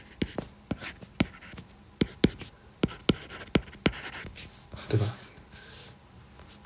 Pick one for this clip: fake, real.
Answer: real